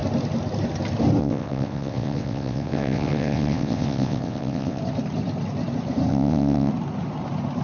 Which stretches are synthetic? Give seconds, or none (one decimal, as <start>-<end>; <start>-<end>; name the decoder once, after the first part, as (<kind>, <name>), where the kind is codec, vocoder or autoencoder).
1.2-4.8 (vocoder, WaveNeXt); 6.1-6.7